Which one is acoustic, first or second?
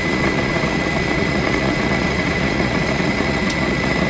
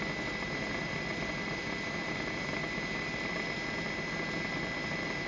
second